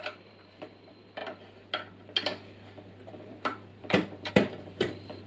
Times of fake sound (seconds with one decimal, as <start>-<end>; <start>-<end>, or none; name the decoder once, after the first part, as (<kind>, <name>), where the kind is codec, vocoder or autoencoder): 0.0-1.2 (vocoder, BigVGAN v2); 3.1-5.3